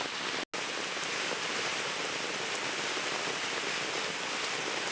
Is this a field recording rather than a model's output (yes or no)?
yes